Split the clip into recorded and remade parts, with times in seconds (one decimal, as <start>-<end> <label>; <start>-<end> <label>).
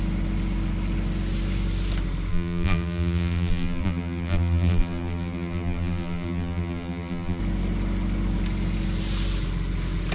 0.0-2.3 recorded; 2.3-7.4 remade; 7.4-10.1 recorded